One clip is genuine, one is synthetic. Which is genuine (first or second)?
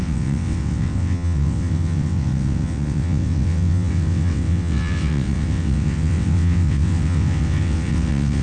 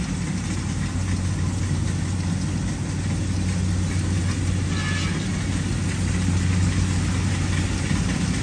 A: second